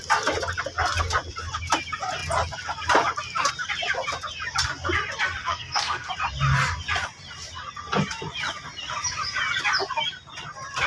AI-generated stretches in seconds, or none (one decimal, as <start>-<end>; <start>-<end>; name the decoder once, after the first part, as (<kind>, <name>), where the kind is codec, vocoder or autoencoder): 5.4-6.1 (codec, SNAC)